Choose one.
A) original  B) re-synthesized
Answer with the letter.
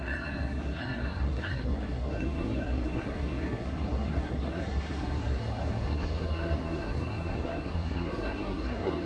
B